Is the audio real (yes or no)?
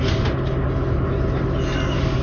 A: yes